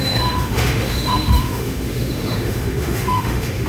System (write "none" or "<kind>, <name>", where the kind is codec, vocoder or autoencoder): autoencoder, DAC-VAE